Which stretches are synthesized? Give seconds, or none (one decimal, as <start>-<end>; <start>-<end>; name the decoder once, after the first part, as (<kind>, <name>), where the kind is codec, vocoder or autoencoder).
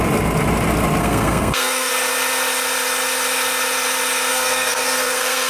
1.0-1.9 (codec, SNAC); 4.3-5.5